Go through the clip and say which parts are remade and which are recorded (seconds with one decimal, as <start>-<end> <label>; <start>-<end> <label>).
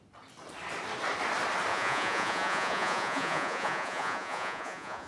0.0-1.7 recorded; 1.7-5.1 remade